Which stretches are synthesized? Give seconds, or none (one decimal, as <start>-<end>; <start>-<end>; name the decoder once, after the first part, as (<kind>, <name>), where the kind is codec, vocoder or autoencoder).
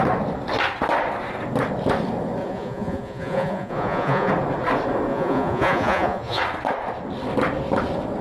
2.4-4.3 (vocoder, Vocos); 5.1-6.4